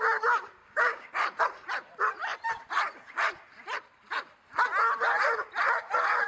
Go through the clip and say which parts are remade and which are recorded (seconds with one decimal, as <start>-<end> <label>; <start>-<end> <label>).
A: 0.0-0.6 recorded; 0.6-1.1 remade; 1.1-6.3 recorded